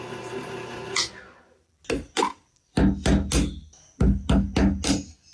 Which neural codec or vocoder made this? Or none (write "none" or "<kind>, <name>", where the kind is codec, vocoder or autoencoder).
none